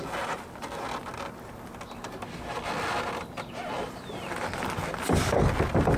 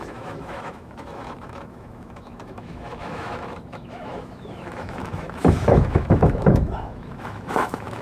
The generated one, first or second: second